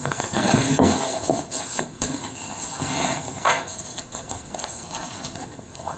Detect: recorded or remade remade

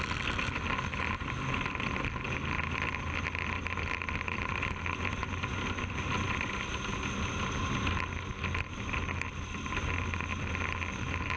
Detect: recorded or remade recorded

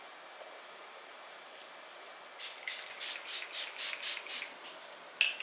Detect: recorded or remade recorded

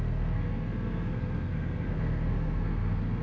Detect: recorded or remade remade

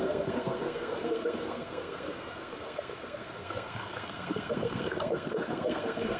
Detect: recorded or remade remade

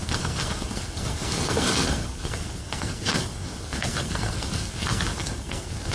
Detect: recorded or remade remade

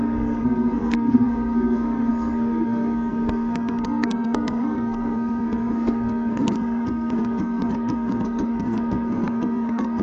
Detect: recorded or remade remade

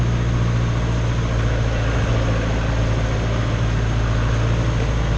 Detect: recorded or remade recorded